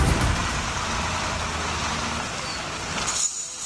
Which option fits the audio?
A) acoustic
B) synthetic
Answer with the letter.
A